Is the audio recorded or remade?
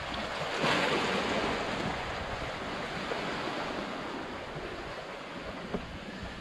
remade